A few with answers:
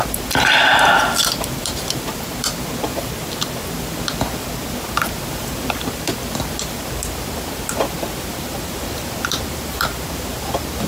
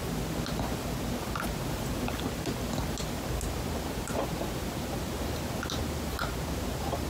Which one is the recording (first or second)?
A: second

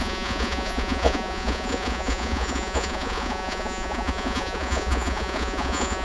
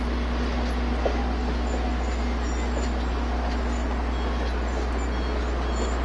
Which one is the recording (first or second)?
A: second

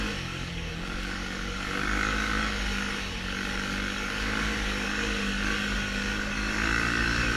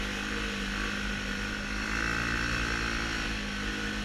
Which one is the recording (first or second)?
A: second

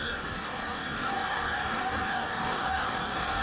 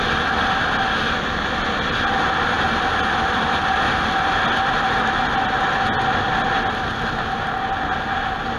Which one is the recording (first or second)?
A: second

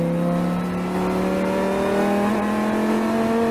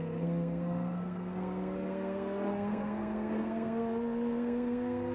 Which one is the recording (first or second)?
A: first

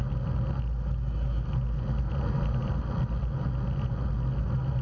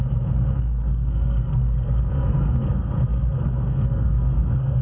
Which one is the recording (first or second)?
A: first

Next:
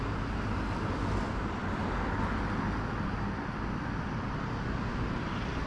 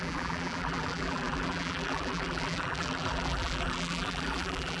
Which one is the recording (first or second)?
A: first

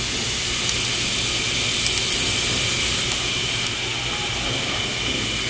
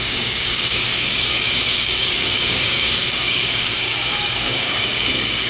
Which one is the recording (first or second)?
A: first